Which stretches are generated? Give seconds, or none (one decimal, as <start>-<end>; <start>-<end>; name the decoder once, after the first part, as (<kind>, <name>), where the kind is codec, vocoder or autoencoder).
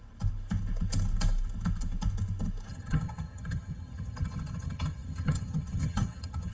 2.7-6.5 (vocoder, HiFi-GAN)